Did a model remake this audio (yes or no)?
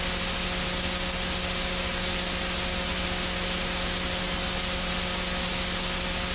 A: no